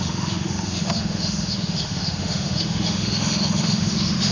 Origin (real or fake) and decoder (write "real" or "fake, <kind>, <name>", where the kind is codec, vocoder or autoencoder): fake, autoencoder, DAC-VAE